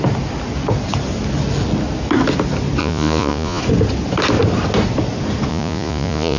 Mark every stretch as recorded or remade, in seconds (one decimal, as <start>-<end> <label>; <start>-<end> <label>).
0.0-2.8 recorded; 2.8-3.6 remade; 3.6-5.5 recorded; 5.5-6.4 remade